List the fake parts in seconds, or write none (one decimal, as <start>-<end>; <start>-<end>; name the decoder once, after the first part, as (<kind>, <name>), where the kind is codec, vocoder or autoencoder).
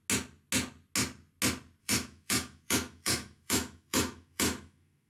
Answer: 1.8-5.1 (autoencoder, DAC-VAE)